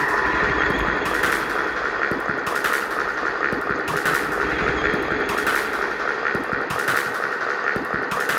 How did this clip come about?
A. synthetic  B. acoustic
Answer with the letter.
B